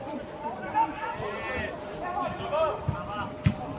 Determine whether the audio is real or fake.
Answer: real